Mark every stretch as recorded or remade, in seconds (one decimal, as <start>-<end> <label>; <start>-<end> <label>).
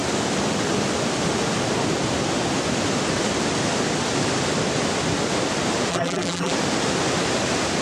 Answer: 0.0-5.9 recorded; 5.9-6.5 remade; 6.5-7.8 recorded